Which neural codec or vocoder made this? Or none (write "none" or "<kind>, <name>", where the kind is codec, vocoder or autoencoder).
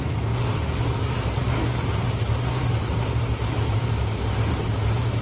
none